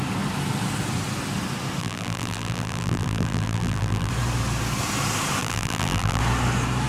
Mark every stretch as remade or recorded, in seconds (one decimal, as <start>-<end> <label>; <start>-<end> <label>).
0.0-1.8 recorded; 1.8-4.1 remade; 4.1-5.4 recorded; 5.4-6.2 remade; 6.2-6.9 recorded